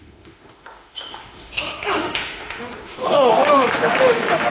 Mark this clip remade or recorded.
remade